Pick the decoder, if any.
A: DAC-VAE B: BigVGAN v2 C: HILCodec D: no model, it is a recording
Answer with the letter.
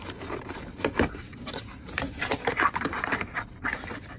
B